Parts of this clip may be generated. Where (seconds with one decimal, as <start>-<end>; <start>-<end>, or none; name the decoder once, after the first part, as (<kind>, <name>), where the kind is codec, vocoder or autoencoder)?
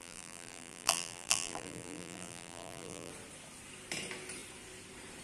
0.0-3.1 (vocoder, BigVGAN v2)